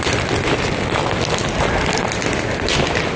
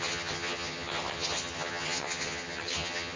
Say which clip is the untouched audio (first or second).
first